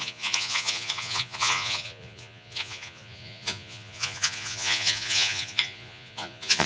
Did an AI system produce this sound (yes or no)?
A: yes